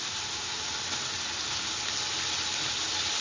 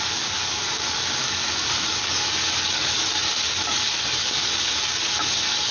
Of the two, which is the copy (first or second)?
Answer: second